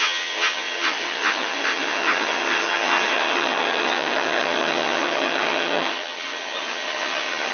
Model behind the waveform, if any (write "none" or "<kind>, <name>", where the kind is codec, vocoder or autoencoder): vocoder, HiFi-GAN